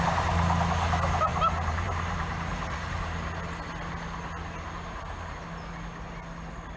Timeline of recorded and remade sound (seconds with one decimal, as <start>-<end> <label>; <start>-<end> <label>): 0.0-1.3 recorded; 1.3-3.0 remade; 3.0-6.8 recorded